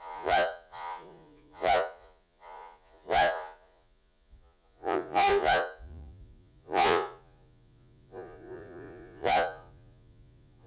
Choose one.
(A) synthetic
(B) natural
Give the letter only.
A